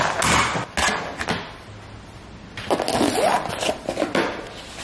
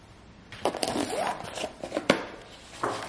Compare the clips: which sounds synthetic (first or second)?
second